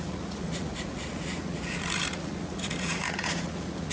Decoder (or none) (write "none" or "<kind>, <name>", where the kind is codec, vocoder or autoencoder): vocoder, Vocos